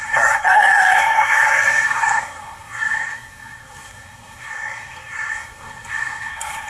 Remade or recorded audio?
remade